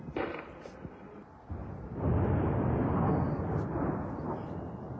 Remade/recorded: recorded